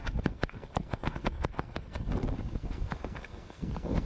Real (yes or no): no